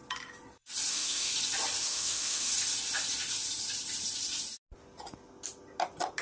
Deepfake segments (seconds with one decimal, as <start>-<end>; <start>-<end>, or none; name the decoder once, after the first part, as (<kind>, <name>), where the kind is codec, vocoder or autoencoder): 0.9-1.3 (autoencoder, DAC-VAE); 1.8-2.5

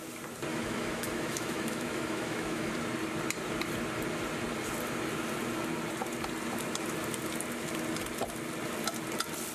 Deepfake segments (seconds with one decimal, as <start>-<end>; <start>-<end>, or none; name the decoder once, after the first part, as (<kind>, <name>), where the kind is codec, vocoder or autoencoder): 0.5-2.7 (autoencoder, DAC-VAE)

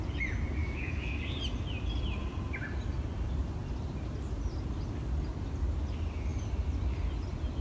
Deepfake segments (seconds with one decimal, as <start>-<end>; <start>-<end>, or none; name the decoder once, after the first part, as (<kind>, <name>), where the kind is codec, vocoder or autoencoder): 0.6-1.2 (autoencoder, DAC-VAE)

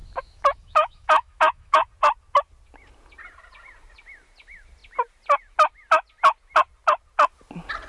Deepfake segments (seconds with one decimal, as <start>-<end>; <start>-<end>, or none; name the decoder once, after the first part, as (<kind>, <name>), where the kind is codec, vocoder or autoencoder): 0.0-1.9 (autoencoder, DAC-VAE)

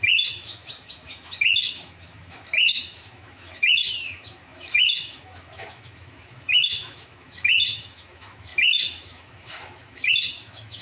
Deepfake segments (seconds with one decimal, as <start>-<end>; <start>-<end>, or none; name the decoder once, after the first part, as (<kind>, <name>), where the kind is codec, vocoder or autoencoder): 0.0-10.8 (autoencoder, DAC-VAE)